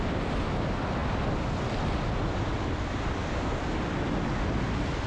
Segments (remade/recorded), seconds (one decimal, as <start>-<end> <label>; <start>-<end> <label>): 0.0-5.1 recorded